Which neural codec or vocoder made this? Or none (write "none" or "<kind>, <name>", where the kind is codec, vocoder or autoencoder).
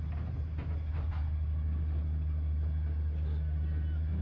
none